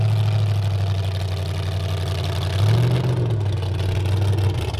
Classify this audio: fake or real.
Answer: real